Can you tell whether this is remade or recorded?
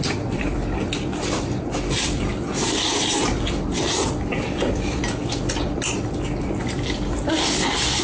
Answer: recorded